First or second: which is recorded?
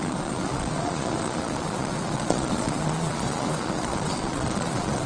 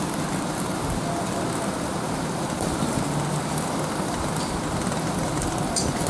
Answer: second